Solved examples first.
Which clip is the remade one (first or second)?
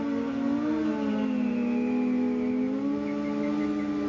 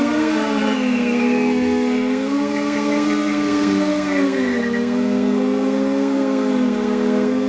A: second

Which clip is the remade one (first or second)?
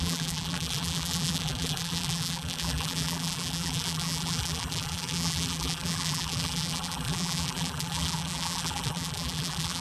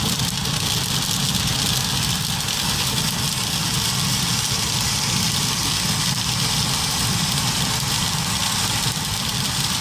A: first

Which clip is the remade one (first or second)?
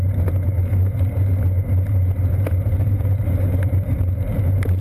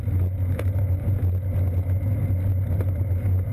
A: first